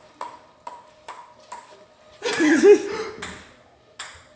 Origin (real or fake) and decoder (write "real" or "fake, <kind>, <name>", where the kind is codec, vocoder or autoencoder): real